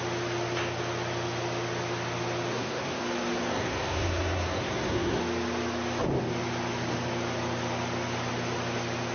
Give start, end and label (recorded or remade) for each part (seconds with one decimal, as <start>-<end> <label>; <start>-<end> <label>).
0.0-2.5 recorded; 2.5-3.0 remade; 3.0-3.5 recorded; 3.5-5.2 remade; 5.2-9.1 recorded